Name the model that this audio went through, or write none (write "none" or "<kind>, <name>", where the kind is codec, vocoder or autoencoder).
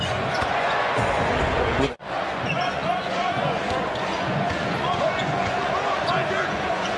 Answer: vocoder, Vocos